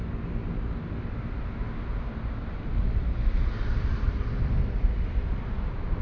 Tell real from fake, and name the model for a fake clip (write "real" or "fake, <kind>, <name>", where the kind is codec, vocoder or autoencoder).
real